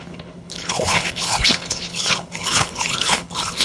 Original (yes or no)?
no